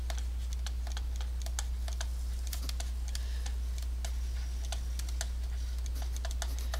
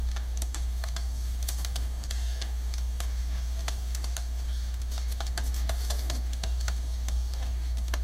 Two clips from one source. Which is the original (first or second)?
first